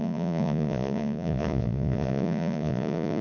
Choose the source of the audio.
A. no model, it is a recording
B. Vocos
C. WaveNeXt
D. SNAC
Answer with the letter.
B